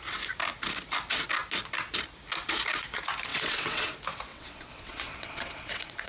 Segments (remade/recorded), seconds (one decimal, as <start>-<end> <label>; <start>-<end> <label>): 0.0-3.3 recorded; 3.3-3.9 remade; 3.9-4.3 recorded; 4.3-6.1 remade